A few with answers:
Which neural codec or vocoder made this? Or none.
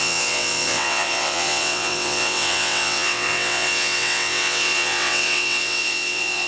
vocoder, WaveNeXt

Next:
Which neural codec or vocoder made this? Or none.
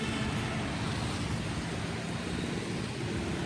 none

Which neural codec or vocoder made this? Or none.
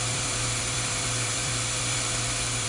vocoder, BigVGAN v2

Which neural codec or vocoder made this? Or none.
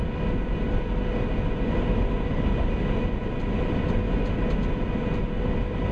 none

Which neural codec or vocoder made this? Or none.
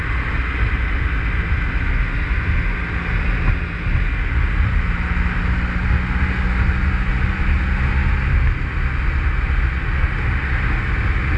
none